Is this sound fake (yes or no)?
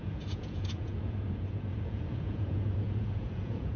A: yes